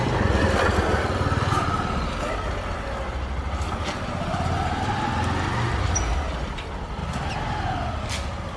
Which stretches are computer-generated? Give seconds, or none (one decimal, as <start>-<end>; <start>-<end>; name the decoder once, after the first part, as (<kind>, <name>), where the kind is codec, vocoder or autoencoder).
none